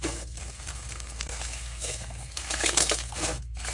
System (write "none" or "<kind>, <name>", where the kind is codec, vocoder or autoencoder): codec, SNAC